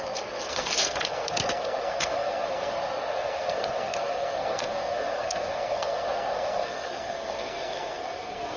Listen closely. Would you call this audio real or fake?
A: fake